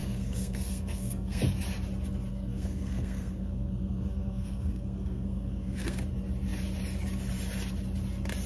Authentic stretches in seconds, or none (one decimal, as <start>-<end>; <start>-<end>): 1.4-2.3; 6.0-8.5